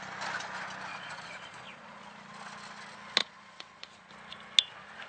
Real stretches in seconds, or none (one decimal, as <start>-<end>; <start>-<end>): 0.0-0.9; 2.0-3.2; 4.1-5.1